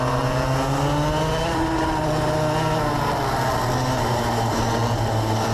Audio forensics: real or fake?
real